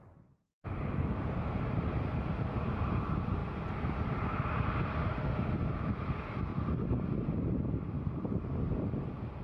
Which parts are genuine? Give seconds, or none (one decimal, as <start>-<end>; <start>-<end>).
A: 0.0-3.4; 4.9-6.5